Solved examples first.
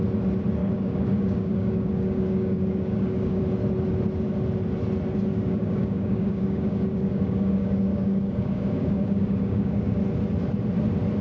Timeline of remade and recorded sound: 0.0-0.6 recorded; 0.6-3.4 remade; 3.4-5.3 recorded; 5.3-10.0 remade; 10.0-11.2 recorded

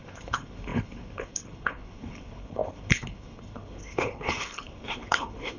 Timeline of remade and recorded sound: 0.0-5.6 remade

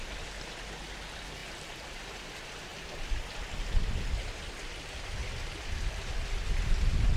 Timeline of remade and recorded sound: 0.0-1.4 recorded; 1.4-2.3 remade; 2.3-7.2 recorded